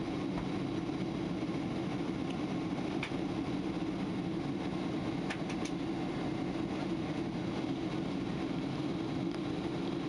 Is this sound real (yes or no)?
yes